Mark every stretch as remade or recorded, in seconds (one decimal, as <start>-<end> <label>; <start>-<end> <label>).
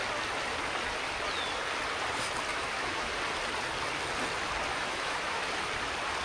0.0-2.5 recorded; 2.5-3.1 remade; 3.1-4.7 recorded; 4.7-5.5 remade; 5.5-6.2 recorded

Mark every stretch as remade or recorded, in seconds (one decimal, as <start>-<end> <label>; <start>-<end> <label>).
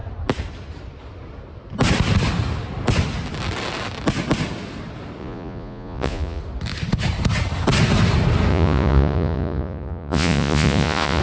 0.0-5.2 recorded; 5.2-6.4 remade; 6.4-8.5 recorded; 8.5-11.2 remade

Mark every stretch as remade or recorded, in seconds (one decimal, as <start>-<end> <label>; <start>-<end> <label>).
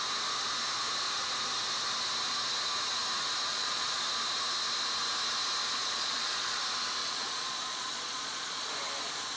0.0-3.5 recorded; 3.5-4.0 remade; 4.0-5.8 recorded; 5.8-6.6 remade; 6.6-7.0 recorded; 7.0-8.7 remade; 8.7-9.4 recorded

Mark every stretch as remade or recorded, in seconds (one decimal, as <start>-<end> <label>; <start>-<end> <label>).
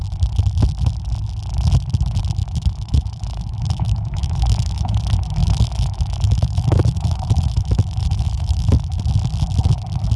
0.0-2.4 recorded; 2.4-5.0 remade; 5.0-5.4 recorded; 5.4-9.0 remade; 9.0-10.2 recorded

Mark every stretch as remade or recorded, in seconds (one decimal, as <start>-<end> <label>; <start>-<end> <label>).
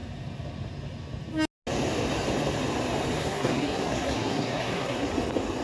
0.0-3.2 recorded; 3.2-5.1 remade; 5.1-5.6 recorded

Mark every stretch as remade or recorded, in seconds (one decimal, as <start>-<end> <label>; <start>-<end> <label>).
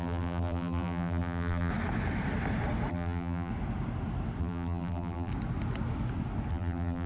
0.0-1.7 remade; 1.7-2.9 recorded; 2.9-3.5 remade; 3.5-4.4 recorded; 4.4-5.3 remade; 5.3-6.5 recorded; 6.5-7.1 remade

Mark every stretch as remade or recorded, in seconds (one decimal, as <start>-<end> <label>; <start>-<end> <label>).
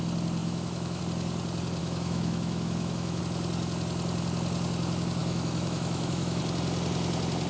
0.0-0.4 recorded; 0.4-1.0 remade; 1.0-1.8 recorded; 1.8-3.2 remade; 3.2-5.2 recorded; 5.2-6.4 remade; 6.4-7.5 recorded